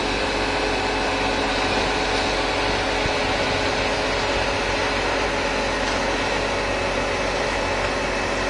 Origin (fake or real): real